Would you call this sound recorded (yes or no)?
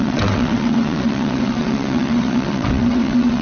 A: no